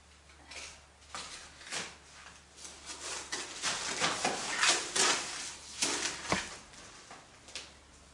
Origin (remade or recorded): recorded